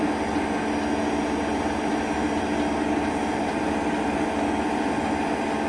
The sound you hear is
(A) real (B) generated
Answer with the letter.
A